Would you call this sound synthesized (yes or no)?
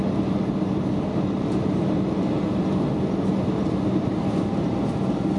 no